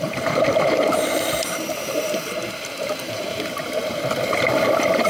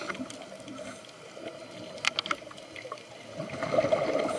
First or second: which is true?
second